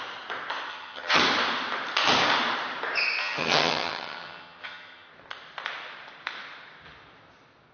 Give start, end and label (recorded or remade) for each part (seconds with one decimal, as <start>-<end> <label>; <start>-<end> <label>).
0.0-0.7 recorded; 0.7-1.2 remade; 1.2-3.2 recorded; 3.2-5.1 remade; 5.1-7.7 recorded